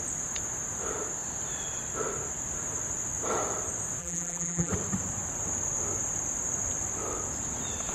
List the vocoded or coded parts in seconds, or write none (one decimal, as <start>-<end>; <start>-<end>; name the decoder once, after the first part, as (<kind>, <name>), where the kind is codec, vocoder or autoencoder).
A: 4.0-4.7 (vocoder, BigVGAN v2)